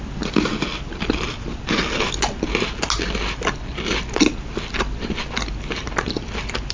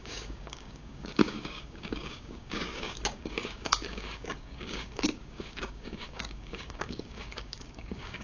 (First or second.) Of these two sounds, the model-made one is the second